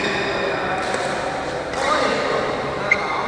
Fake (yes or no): no